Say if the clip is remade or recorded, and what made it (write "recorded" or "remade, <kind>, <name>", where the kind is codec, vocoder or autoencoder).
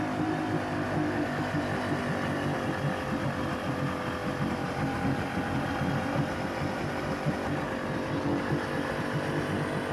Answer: recorded